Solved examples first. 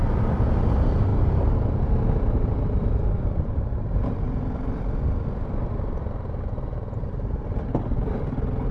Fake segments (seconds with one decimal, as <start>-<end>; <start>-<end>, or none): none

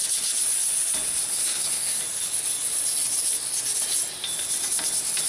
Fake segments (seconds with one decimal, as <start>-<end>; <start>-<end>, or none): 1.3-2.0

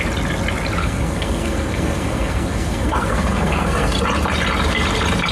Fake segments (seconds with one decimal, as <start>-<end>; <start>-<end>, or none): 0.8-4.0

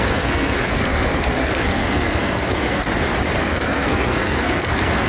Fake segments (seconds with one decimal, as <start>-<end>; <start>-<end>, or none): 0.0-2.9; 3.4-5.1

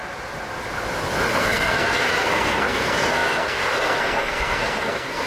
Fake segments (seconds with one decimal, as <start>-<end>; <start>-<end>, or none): 1.3-5.3